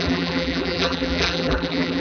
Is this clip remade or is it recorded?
remade